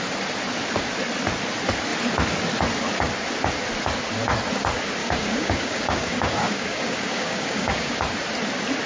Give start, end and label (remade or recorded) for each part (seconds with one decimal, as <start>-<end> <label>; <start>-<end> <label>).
0.0-5.0 recorded; 5.0-8.0 remade; 8.0-8.9 recorded